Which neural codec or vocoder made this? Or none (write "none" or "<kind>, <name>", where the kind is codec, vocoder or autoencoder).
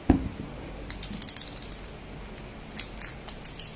none